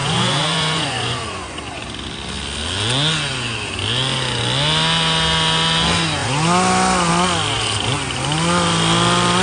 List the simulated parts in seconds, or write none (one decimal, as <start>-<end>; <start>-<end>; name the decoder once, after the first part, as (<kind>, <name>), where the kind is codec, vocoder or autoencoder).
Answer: 0.0-1.8 (vocoder, Vocos)